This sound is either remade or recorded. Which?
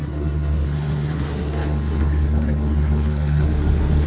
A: remade